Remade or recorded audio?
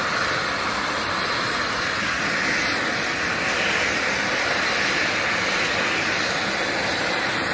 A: recorded